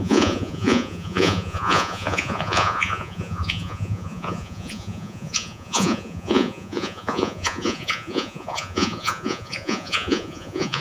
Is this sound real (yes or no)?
no